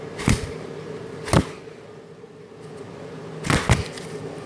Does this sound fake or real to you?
real